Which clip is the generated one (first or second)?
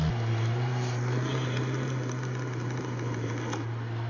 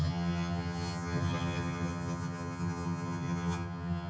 second